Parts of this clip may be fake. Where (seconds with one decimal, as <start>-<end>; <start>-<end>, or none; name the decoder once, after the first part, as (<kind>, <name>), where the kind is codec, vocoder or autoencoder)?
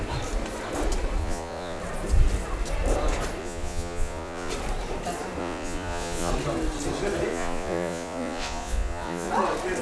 1.2-1.8 (vocoder, Vocos); 3.4-4.5; 5.4-6.3; 7.3-9.3